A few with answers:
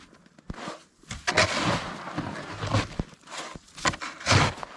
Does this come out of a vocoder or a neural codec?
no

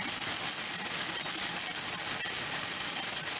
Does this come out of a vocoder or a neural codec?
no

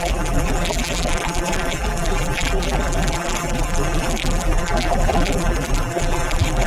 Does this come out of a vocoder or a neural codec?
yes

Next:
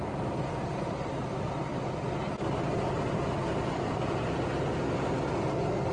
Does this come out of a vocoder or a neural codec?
no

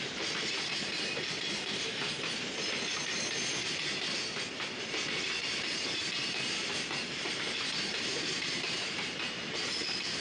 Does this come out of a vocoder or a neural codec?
yes